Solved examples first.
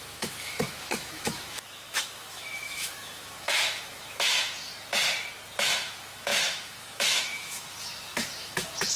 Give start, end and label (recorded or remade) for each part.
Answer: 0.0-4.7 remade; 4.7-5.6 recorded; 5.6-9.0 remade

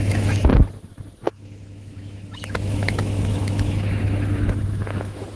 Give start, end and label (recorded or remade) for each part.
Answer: 0.0-0.5 remade; 0.5-1.3 recorded; 1.3-5.4 remade

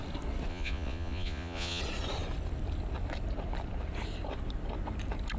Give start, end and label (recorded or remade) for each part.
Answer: 0.0-0.5 recorded; 0.5-1.8 remade; 1.8-5.4 recorded